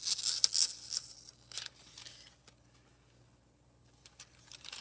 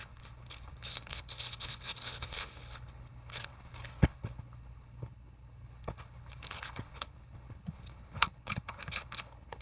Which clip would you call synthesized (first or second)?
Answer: second